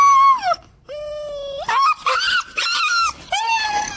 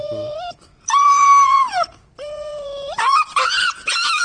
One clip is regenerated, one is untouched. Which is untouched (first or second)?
first